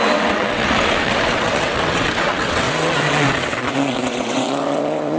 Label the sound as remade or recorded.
remade